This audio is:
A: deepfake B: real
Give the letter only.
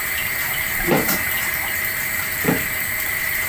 A